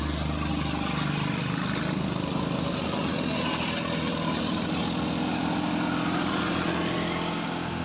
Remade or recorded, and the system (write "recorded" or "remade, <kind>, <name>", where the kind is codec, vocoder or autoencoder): recorded